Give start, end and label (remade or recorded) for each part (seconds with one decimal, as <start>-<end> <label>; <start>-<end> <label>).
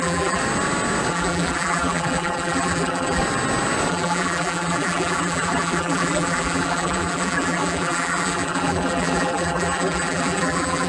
0.0-0.4 remade; 0.4-1.1 recorded; 1.1-3.2 remade; 3.2-3.9 recorded; 3.9-10.9 remade